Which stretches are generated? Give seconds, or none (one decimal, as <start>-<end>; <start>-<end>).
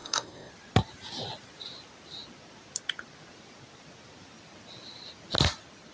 0.0-0.5